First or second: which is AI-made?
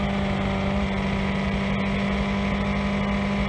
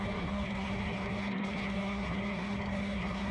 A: second